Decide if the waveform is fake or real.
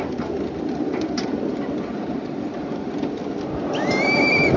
fake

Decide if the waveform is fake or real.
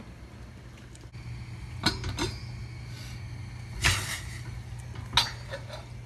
real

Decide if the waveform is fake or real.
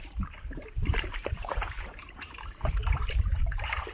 fake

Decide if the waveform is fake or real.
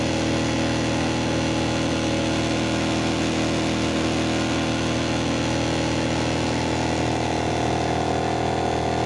real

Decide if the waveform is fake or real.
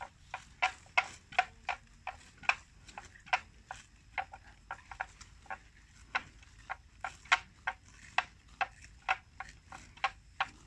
real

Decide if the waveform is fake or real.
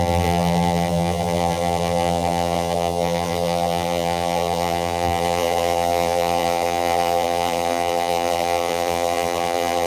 fake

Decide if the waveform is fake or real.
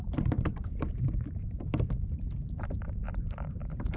fake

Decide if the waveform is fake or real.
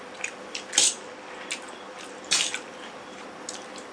real